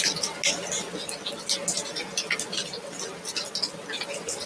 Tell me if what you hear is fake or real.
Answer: real